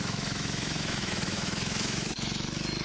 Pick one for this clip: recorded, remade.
remade